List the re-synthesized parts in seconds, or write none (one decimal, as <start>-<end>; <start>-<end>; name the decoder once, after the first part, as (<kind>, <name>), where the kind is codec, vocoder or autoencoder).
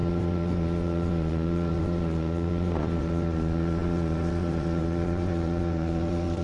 0.0-6.4 (vocoder, Vocos)